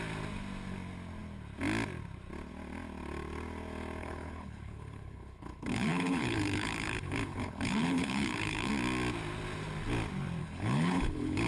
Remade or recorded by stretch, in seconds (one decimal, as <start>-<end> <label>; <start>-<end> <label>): 0.0-4.0 recorded; 4.0-8.7 remade; 8.7-10.4 recorded; 10.4-11.5 remade